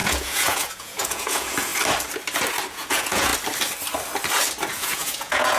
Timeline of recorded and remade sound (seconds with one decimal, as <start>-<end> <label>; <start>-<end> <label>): 0.0-1.7 remade; 1.7-2.7 recorded; 2.7-3.3 remade; 3.3-4.7 recorded; 4.7-5.6 remade

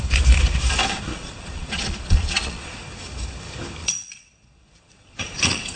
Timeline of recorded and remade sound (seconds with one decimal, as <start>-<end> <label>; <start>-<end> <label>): 0.0-1.1 recorded; 1.1-2.8 remade; 2.8-3.8 recorded; 3.8-5.8 remade

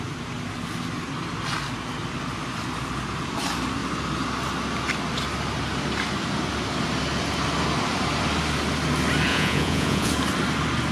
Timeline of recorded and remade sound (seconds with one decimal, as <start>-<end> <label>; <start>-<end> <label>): 0.0-9.3 recorded; 9.3-10.1 remade; 10.1-10.9 recorded

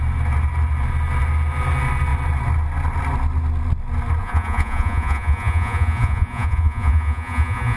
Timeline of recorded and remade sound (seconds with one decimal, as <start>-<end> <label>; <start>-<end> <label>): 0.0-4.2 recorded; 4.2-7.8 remade

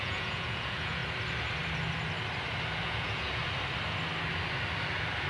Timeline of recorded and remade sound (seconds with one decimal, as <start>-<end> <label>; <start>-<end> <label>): 0.0-1.0 remade; 1.0-2.8 recorded; 2.8-3.4 remade; 3.4-5.3 recorded